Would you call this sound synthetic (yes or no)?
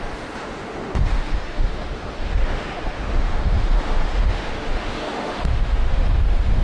yes